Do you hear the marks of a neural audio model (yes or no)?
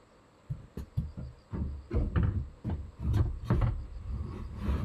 no